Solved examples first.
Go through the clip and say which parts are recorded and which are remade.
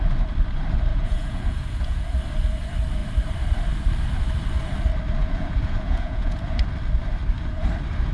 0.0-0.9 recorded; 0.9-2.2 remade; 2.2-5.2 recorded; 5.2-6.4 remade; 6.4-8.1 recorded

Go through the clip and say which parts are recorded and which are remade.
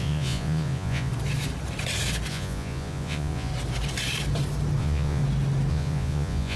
0.0-1.1 remade; 1.1-2.3 recorded; 2.3-3.5 remade; 3.5-4.8 recorded; 4.8-5.2 remade; 5.2-5.7 recorded; 5.7-6.6 remade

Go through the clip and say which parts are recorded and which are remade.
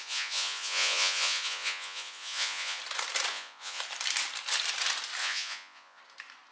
0.0-2.8 remade; 2.8-3.3 recorded; 3.3-3.8 remade; 3.8-5.2 recorded; 5.2-6.0 remade; 6.0-6.5 recorded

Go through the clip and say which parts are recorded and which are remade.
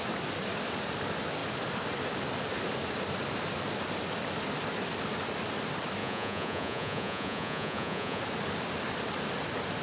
0.0-6.0 recorded; 6.0-8.2 remade; 8.2-9.8 recorded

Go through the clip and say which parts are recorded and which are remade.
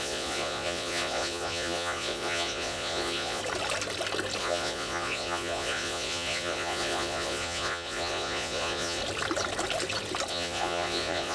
0.0-3.4 remade; 3.4-4.4 recorded; 4.4-9.0 remade; 9.0-10.3 recorded; 10.3-11.3 remade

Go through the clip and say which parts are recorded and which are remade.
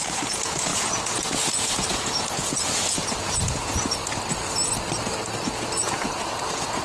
0.0-4.0 remade; 4.0-5.4 recorded; 5.4-6.8 remade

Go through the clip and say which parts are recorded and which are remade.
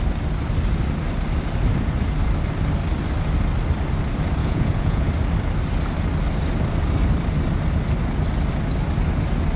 0.0-4.4 recorded; 4.4-5.1 remade; 5.1-9.6 recorded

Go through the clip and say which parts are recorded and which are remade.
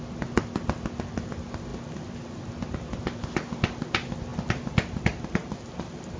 0.0-6.2 recorded